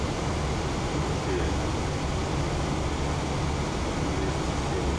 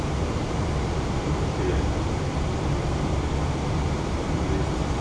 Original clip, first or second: first